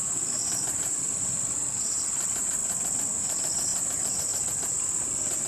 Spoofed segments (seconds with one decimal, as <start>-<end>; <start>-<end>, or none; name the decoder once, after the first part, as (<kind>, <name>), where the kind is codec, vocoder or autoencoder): none